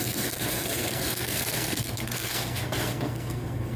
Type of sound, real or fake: fake